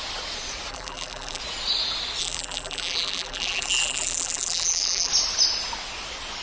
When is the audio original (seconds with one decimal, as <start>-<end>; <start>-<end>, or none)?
0.0-0.7; 1.4-2.2; 5.1-6.4